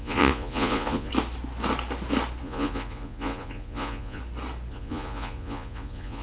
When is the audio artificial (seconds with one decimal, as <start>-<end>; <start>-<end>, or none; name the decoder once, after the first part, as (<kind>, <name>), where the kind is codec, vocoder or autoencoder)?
0.0-1.1 (vocoder, Vocos); 2.4-4.2; 4.7-6.2